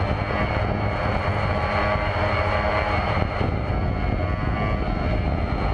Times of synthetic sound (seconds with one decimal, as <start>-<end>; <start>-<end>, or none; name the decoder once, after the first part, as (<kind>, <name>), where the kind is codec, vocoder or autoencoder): 3.0-3.7 (vocoder, BigVGAN v2)